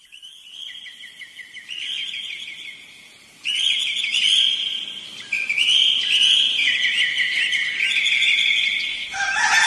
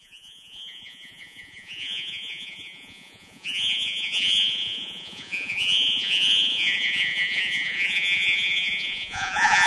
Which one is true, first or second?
first